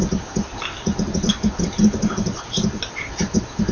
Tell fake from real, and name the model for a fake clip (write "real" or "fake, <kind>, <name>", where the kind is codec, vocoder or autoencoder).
real